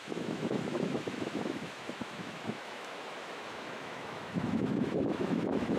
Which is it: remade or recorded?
remade